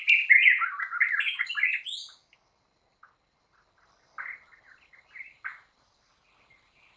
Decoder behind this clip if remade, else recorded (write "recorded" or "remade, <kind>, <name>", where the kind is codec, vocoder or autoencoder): recorded